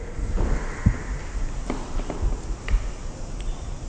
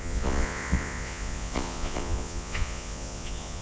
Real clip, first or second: first